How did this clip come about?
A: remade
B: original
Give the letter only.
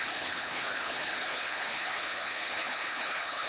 A